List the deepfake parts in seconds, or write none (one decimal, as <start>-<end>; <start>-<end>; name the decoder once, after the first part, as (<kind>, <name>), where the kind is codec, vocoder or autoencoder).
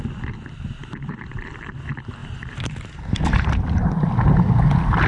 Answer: 2.2-4.1 (vocoder, BigVGAN v2)